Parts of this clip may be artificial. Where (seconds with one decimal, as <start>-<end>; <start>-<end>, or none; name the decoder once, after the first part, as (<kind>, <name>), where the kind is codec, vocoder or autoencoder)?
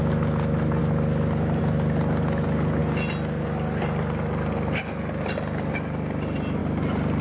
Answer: none